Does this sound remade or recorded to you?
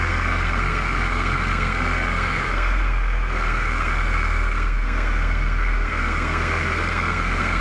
remade